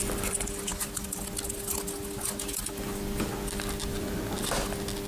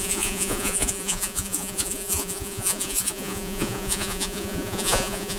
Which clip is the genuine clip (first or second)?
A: first